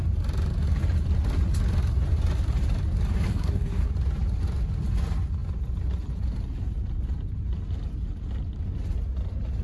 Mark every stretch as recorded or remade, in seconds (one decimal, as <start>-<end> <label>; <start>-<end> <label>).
0.0-3.3 recorded; 3.3-3.9 remade; 3.9-9.6 recorded